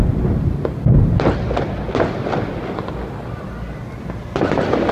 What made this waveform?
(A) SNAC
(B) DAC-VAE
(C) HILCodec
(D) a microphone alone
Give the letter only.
D